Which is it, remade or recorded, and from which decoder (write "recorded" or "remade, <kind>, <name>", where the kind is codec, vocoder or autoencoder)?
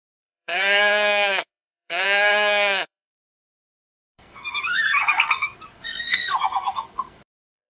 remade, codec, SNAC